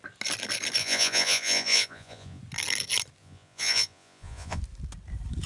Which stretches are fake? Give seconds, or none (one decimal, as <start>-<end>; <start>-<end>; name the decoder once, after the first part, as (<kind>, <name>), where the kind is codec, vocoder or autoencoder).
0.8-2.4 (vocoder, Vocos); 3.2-4.6